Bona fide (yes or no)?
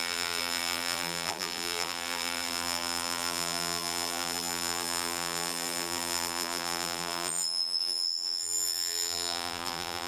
no